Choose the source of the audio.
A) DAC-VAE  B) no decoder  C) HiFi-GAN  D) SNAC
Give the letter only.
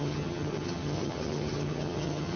C